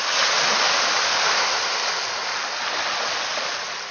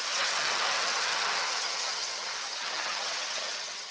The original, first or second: first